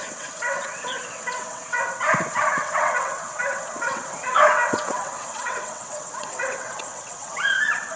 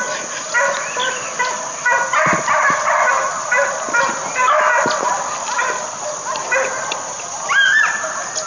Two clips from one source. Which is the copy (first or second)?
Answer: first